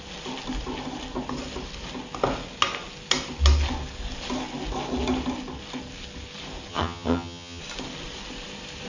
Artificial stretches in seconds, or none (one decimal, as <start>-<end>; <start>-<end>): 6.7-7.6